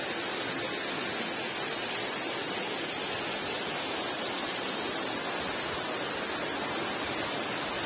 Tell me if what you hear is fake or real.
real